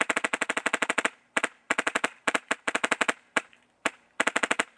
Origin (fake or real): fake